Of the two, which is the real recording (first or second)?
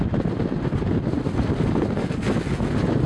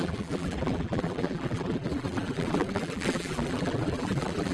first